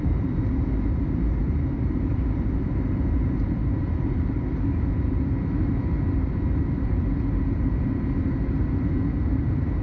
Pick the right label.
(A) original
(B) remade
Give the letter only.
B